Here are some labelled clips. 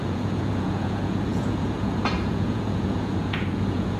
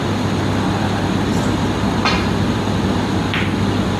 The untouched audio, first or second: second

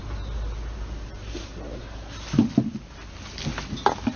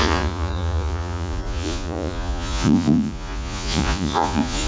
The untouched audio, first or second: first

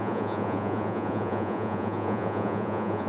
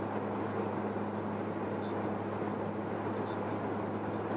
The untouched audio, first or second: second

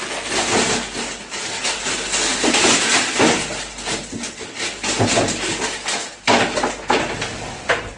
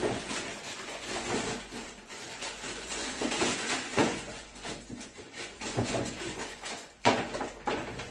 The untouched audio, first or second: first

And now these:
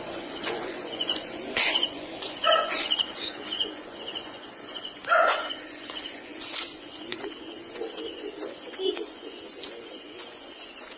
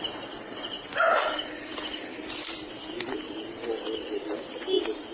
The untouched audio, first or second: second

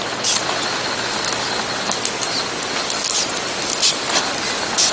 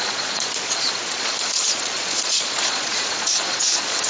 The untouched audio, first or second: first